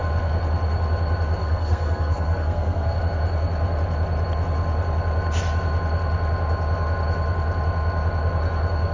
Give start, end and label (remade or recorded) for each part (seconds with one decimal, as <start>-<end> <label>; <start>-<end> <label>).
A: 0.0-1.4 recorded; 1.4-3.0 remade; 3.0-8.9 recorded